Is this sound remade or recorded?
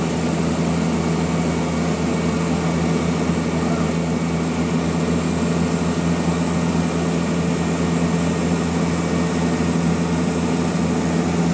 recorded